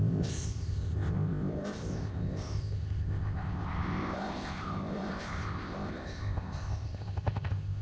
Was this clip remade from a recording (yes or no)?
yes